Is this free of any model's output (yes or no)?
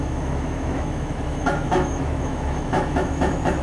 no